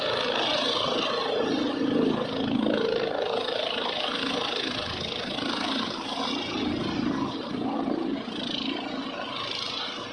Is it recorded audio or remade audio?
recorded